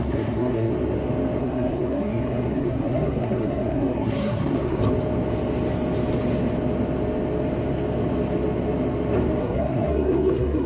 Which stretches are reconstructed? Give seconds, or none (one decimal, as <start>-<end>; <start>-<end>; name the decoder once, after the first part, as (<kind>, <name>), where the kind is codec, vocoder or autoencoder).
0.0-0.7 (codec, SNAC); 1.4-4.8; 9.4-10.7